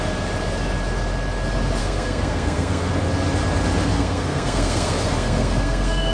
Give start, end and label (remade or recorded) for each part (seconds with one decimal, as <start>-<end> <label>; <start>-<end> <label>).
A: 0.0-1.8 recorded; 1.8-2.9 remade; 2.9-3.9 recorded; 3.9-6.1 remade